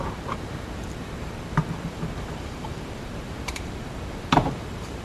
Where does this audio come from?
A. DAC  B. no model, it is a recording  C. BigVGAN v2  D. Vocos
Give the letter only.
C